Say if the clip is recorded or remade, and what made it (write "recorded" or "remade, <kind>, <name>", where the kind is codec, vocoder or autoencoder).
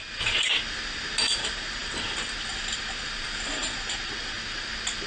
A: recorded